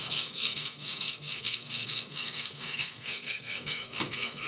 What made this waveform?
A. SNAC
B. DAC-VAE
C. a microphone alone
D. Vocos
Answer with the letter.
A